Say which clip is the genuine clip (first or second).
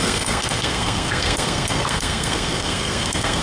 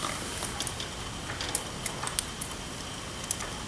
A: second